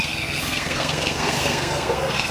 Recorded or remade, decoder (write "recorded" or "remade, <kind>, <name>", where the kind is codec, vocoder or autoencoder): remade, codec, SNAC